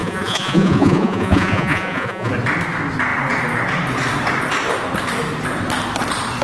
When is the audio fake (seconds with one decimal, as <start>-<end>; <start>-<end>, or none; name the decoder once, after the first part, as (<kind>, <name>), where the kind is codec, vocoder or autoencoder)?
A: 0.0-2.3 (vocoder, Vocos)